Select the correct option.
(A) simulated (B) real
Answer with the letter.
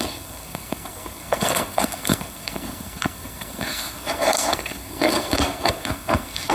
A